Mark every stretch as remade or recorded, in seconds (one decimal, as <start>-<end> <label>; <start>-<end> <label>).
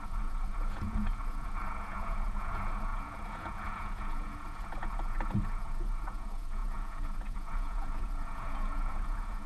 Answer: 0.0-9.5 remade